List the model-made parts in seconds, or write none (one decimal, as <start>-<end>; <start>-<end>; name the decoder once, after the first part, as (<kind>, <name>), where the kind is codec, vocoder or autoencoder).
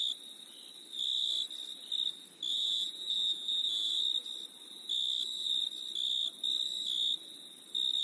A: 2.5-3.9 (vocoder, Vocos)